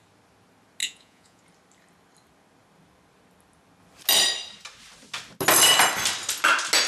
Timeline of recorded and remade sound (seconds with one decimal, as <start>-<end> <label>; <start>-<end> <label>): 0.0-0.8 recorded; 0.8-1.4 remade; 1.4-6.9 recorded